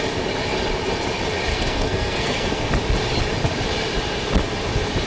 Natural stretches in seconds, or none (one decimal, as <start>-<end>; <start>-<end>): 0.0-1.5; 2.7-5.1